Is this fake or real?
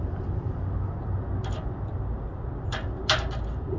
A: real